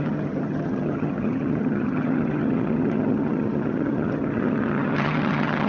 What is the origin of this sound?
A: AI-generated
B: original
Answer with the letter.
A